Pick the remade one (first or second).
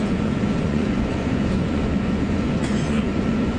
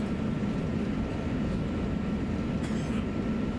first